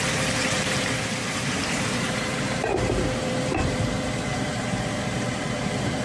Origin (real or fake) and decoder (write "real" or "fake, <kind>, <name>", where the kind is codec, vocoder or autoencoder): fake, vocoder, BigVGAN v2